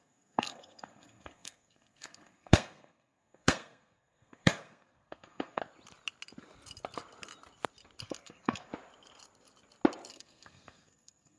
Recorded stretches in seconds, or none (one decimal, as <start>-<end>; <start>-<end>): 5.6-8.0; 8.7-10.1